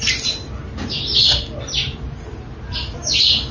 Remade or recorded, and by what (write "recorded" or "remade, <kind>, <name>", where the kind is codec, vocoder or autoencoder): recorded